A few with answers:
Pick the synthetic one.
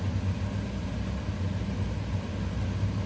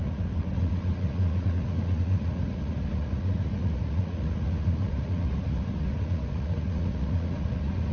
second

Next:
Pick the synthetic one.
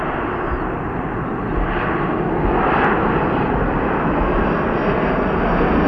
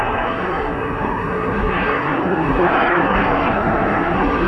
second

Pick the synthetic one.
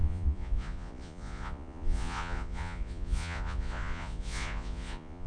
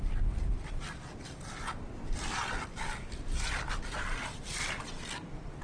first